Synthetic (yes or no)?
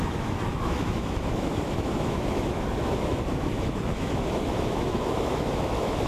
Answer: yes